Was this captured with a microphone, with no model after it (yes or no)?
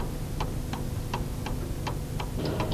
yes